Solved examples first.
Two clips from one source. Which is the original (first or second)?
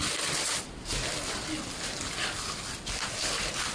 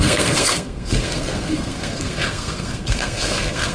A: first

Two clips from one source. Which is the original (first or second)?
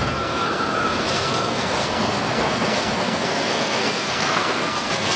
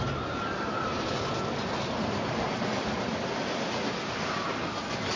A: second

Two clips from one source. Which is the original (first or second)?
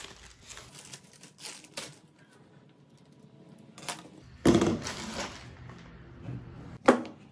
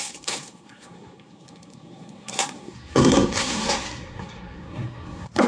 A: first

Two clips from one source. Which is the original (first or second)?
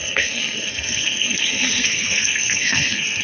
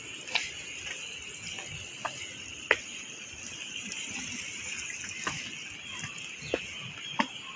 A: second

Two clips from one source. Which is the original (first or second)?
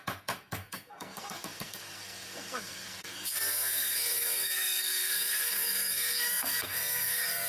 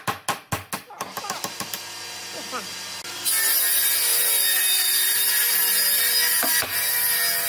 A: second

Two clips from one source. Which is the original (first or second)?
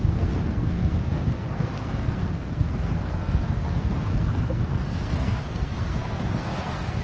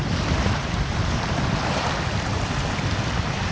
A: second